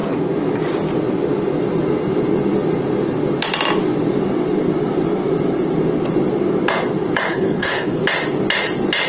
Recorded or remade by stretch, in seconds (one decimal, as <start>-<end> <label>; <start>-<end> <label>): 0.0-7.3 recorded; 7.3-8.0 remade; 8.0-9.1 recorded